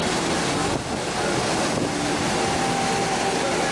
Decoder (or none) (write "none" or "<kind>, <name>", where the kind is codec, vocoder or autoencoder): none